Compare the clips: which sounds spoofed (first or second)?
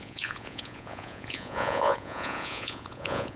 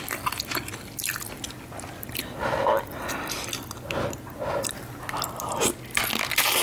first